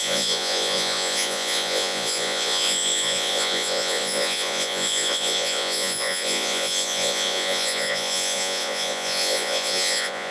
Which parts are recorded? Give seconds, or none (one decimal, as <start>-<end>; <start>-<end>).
none